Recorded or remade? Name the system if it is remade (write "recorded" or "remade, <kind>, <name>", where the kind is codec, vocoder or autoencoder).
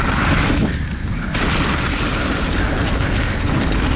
recorded